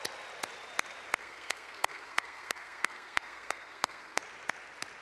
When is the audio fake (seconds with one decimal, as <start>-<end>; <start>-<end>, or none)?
1.2-4.2